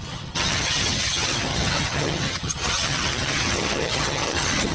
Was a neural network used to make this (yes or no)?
yes